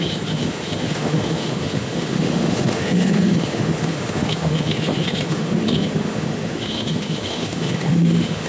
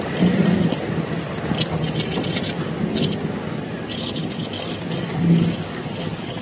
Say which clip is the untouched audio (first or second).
second